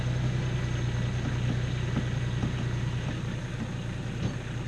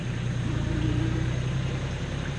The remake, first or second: second